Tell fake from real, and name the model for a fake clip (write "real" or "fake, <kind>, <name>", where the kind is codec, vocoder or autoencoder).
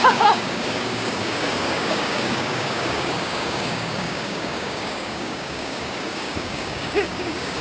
fake, codec, DAC